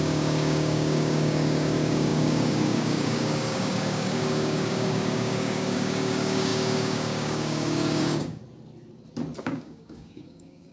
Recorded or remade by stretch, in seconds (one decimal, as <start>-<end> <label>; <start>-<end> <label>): 0.0-8.4 remade; 8.4-9.4 recorded; 9.4-10.7 remade